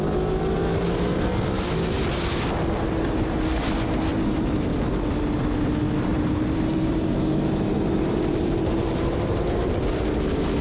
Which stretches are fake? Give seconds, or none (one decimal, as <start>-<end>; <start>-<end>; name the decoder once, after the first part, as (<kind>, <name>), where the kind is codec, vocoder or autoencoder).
4.1-4.7 (vocoder, BigVGAN v2); 6.1-9.8